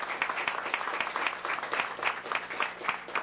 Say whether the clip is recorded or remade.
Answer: recorded